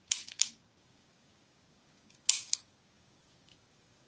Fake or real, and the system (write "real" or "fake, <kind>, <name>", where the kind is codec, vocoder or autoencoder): fake, codec, DAC